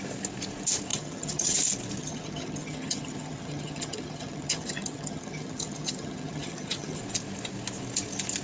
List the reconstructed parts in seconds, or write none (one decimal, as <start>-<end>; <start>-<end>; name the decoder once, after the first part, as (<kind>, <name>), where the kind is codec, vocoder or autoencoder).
0.9-1.6 (vocoder, HiFi-GAN); 2.0-7.0